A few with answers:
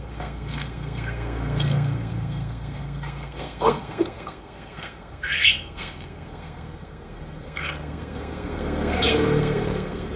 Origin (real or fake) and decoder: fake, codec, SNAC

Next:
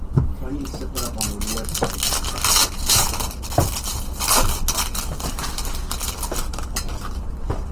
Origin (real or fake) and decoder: real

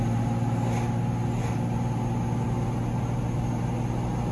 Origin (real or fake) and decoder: real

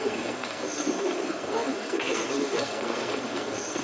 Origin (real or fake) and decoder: fake, codec, SNAC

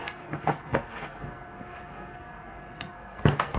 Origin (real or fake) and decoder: fake, codec, SNAC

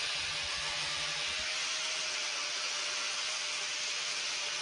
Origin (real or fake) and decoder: real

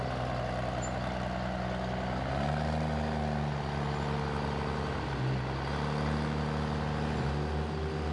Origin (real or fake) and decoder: real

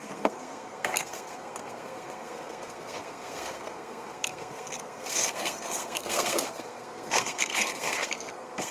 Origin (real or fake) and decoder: fake, codec, SNAC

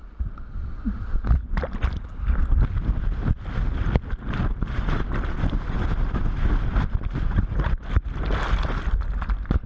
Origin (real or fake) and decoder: real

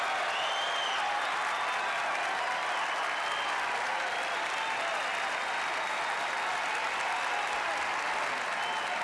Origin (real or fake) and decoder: real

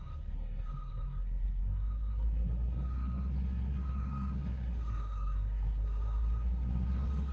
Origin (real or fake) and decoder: fake, codec, SNAC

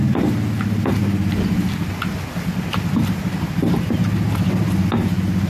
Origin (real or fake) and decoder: real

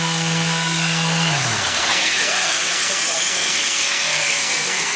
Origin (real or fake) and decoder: fake, codec, SNAC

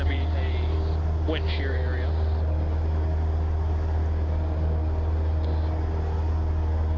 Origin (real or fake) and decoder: real